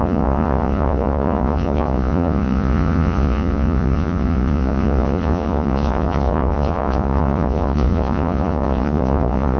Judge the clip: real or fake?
fake